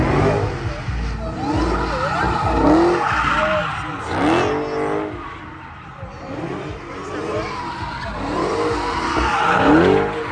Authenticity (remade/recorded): recorded